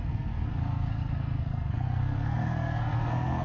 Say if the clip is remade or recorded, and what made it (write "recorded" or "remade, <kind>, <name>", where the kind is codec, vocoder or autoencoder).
remade, codec, SNAC